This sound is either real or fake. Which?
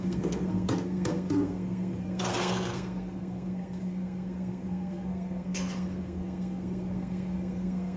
fake